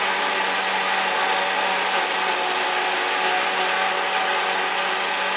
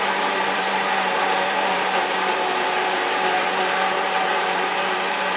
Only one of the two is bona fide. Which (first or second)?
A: first